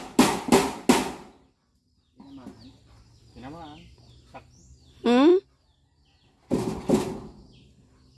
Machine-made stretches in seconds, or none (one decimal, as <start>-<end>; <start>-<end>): none